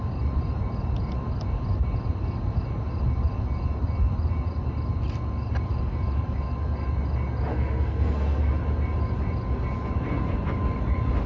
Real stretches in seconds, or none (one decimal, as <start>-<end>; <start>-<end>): 0.0-7.5; 8.5-11.3